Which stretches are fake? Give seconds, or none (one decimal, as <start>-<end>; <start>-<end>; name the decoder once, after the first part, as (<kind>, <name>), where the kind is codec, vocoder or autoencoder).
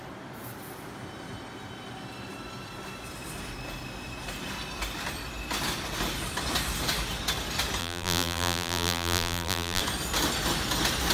7.8-9.8 (vocoder, BigVGAN v2)